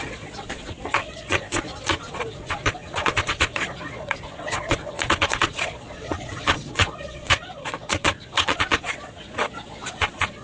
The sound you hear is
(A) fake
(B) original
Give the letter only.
A